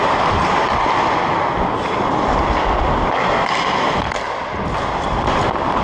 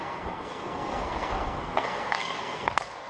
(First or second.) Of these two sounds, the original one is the first